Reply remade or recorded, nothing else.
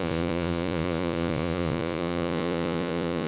remade